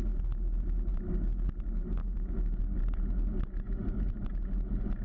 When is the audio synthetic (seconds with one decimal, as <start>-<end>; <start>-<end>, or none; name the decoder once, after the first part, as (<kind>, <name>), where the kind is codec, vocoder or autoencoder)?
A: 2.0-2.6 (autoencoder, DAC-VAE)